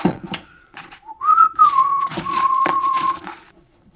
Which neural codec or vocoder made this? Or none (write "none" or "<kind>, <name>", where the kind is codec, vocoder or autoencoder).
vocoder, Vocos